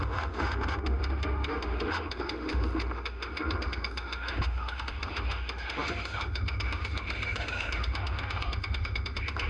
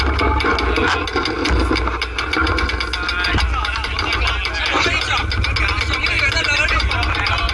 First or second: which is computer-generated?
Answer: first